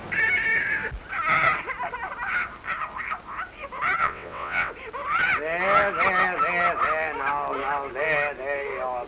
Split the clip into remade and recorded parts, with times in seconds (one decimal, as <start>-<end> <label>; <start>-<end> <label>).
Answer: 0.0-4.0 recorded; 4.0-4.7 remade; 4.7-9.1 recorded